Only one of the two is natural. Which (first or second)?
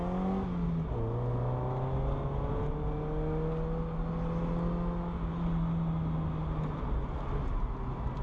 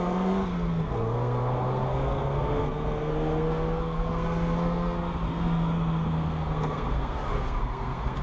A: first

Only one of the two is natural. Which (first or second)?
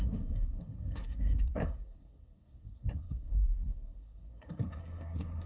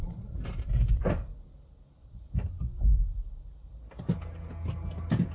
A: second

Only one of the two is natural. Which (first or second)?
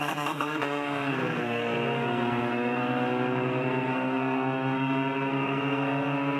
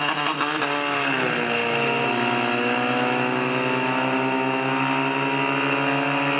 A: second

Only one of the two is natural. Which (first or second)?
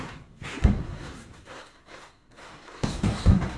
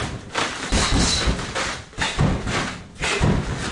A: second